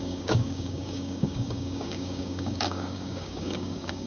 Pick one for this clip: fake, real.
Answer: fake